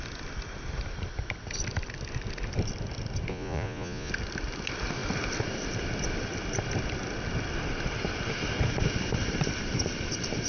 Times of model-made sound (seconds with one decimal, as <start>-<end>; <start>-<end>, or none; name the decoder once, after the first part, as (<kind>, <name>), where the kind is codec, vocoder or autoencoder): 3.3-4.1 (vocoder, Vocos)